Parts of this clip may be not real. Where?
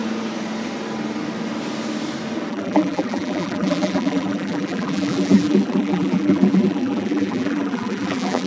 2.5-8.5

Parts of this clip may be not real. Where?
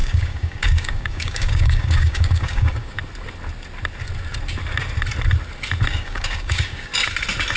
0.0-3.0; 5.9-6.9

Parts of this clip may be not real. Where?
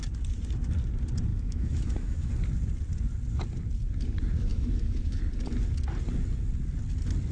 1.3-2.3; 4.5-5.2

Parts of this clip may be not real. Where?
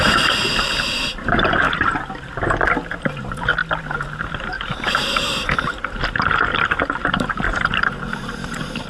0.0-2.3; 3.0-3.5; 4.3-5.7; 7.1-8.9